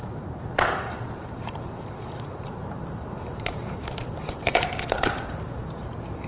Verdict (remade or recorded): remade